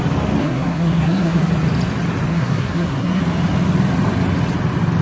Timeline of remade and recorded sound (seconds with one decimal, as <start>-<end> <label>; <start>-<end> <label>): 0.0-0.4 recorded; 0.4-1.5 remade; 1.5-2.3 recorded; 2.3-3.2 remade; 3.2-5.0 recorded